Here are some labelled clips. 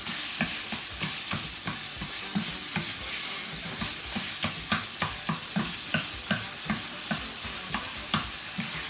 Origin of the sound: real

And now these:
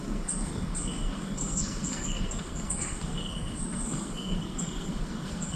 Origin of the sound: fake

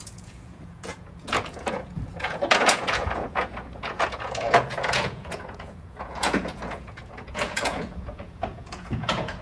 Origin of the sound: fake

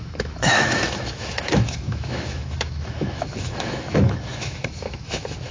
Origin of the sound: fake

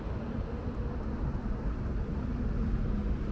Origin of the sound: real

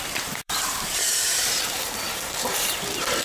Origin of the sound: fake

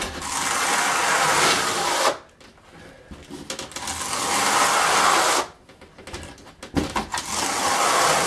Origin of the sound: real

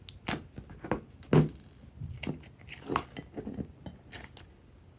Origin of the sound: real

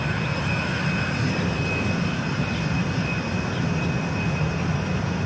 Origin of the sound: real